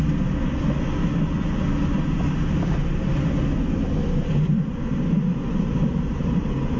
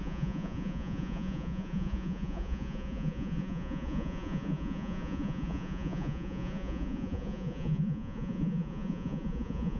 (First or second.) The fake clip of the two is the second